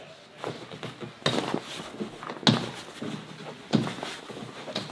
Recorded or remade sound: recorded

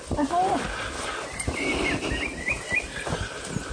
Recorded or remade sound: recorded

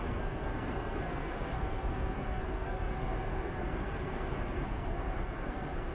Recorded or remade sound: remade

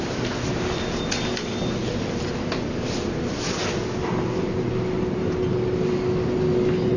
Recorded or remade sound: recorded